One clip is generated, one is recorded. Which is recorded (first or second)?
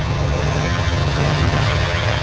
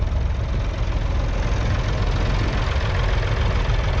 second